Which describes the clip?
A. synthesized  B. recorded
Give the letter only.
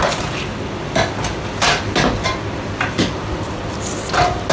B